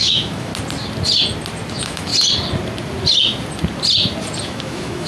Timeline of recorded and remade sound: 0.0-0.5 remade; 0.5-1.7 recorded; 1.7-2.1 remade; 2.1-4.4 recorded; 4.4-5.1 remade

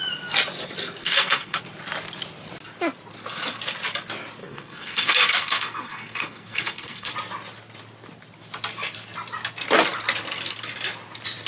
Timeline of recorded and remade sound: 0.0-1.0 recorded; 1.0-1.6 remade; 1.6-4.4 recorded; 4.4-7.1 remade; 7.1-11.5 recorded

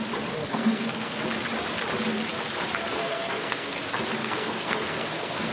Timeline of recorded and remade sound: 0.0-0.4 recorded; 0.4-1.2 remade; 1.2-3.0 recorded; 3.0-3.8 remade; 3.8-4.2 recorded; 4.2-5.5 remade

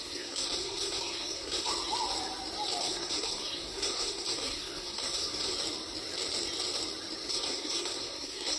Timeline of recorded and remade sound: 0.0-1.7 remade; 1.7-2.8 recorded; 2.8-5.5 remade; 5.5-7.3 recorded; 7.3-8.6 remade

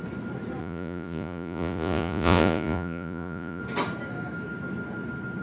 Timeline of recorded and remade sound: 0.0-0.6 recorded; 0.6-3.6 remade; 3.6-5.4 recorded

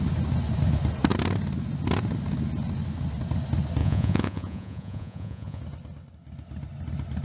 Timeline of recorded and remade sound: 0.0-3.8 recorded; 3.8-5.6 remade; 5.6-7.2 recorded

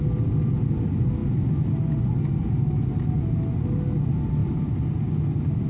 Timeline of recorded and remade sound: 0.0-5.7 recorded